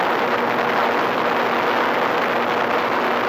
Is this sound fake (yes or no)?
no